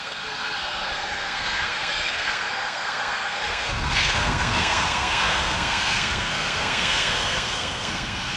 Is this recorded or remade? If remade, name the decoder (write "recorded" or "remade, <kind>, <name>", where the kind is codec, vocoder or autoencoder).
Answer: remade, codec, SNAC